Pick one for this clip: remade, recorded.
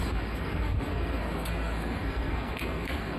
remade